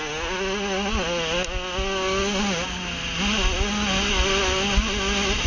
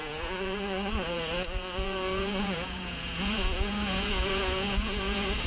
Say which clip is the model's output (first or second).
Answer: second